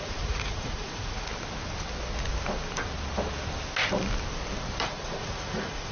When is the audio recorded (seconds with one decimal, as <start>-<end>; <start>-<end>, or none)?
1.3-4.8